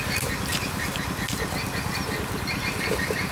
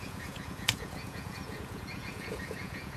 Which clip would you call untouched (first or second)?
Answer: first